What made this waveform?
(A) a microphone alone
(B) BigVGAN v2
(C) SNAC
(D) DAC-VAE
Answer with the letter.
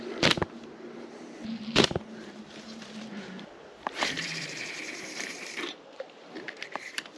B